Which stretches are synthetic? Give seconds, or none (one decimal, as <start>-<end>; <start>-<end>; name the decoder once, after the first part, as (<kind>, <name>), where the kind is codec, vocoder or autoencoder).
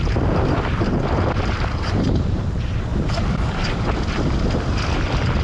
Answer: 0.0-5.4 (vocoder, BigVGAN v2)